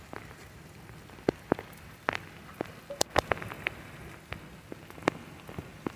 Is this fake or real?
real